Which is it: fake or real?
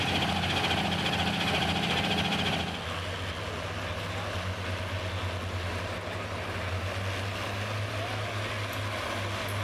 real